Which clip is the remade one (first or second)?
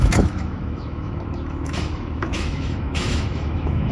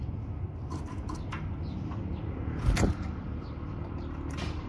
first